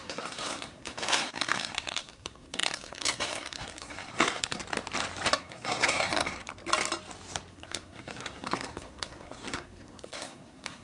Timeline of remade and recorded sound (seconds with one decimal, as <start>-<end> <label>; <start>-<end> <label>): 0.0-4.6 remade; 4.6-5.4 recorded; 5.4-6.5 remade; 6.5-7.5 recorded; 7.5-10.8 remade